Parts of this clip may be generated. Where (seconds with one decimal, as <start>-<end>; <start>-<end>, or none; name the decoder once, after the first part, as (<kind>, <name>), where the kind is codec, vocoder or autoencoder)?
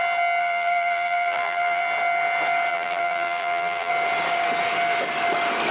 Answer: 0.4-1.8 (vocoder, BigVGAN v2); 2.7-3.9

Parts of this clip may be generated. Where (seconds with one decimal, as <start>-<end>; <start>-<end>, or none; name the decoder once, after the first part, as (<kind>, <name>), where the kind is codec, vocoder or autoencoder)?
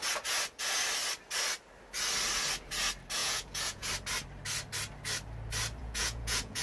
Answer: 3.2-3.9 (vocoder, Vocos); 5.8-6.6